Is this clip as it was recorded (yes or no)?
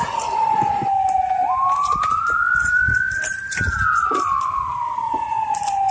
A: yes